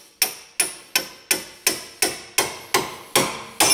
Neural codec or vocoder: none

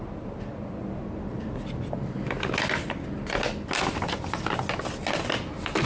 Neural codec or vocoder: none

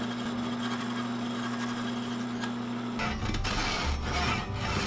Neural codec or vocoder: none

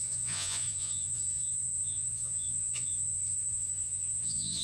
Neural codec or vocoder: vocoder, Vocos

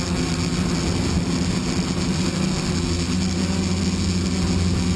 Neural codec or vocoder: none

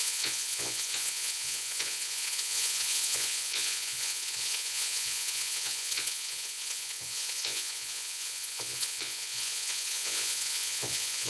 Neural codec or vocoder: vocoder, Vocos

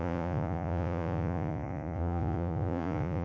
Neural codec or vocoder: vocoder, Vocos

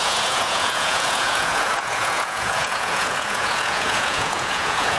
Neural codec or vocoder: vocoder, Vocos